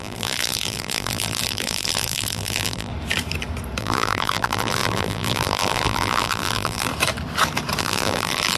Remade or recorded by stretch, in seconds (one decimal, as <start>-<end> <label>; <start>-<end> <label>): 0.0-2.9 remade; 2.9-3.8 recorded; 3.8-6.9 remade; 6.9-7.8 recorded; 7.8-8.6 remade